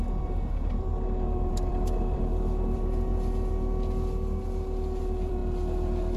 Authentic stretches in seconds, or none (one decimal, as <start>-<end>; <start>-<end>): 0.9-1.5; 3.1-5.0; 5.4-6.2